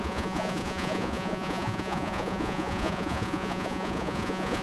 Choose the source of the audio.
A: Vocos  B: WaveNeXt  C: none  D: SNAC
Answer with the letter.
A